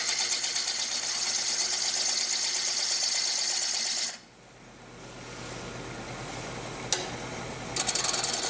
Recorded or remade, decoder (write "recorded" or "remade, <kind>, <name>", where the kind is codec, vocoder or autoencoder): recorded